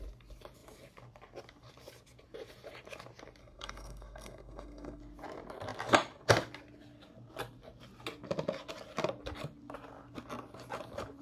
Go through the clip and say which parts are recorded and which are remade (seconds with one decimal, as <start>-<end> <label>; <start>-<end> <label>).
0.0-3.4 recorded; 3.4-5.0 remade; 5.0-11.2 recorded

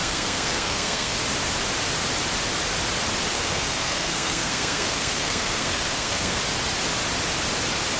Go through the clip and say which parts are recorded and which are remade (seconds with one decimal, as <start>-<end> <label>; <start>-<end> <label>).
0.0-1.2 remade; 1.2-3.3 recorded; 3.3-6.4 remade; 6.4-8.0 recorded

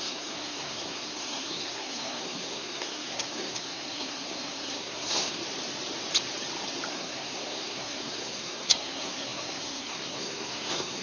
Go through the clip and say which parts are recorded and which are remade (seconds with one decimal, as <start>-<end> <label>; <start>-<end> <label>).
0.0-5.4 remade; 5.4-6.9 recorded; 6.9-11.0 remade